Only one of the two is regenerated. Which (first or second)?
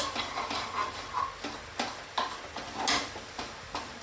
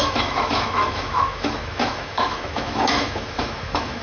second